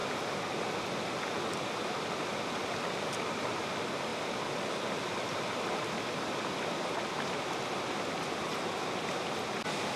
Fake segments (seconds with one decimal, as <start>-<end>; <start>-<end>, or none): none